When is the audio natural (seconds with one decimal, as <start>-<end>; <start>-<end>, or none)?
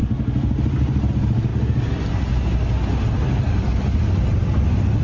0.0-5.0